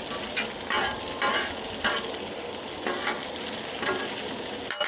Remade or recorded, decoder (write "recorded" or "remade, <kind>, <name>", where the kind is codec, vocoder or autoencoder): recorded